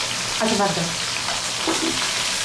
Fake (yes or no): no